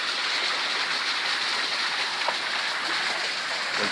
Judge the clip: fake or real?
real